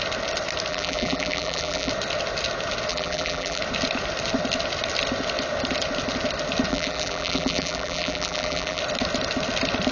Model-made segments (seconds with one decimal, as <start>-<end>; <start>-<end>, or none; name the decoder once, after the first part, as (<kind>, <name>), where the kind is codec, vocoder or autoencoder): 0.7-1.9 (vocoder, BigVGAN v2); 2.9-3.6; 6.7-8.8